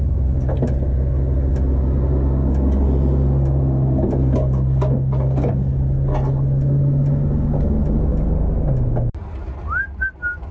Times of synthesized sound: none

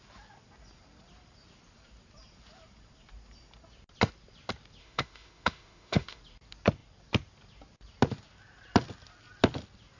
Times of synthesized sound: 4.8-6.2 (autoencoder, DAC-VAE)

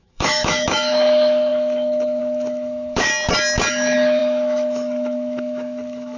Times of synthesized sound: 0.0-3.1 (autoencoder, DAC-VAE); 3.7-6.2